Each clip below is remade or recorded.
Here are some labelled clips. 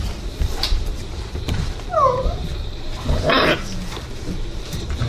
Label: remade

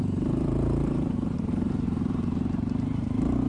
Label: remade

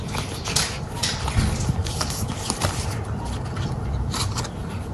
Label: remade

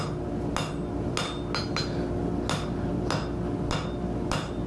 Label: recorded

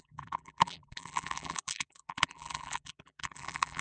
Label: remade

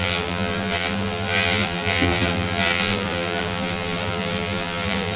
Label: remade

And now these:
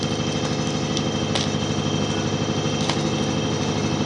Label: recorded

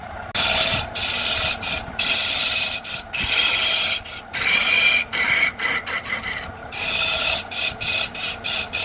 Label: recorded